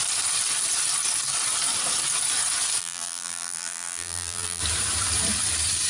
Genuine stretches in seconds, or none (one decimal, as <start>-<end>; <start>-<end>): 0.0-2.8; 4.6-5.9

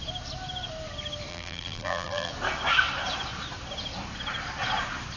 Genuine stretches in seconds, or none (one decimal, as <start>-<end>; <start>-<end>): 0.0-1.3; 2.3-5.2

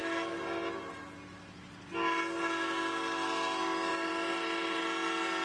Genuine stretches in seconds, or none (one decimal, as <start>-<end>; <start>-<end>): 0.0-3.9; 4.8-5.4